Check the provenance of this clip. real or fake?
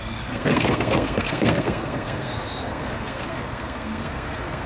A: fake